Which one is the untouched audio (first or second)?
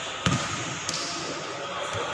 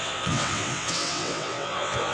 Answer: first